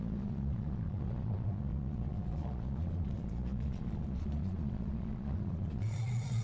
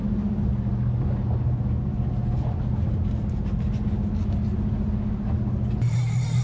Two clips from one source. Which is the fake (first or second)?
first